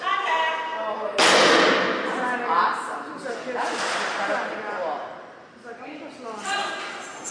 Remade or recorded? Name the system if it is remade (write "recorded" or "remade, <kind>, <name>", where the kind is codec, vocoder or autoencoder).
recorded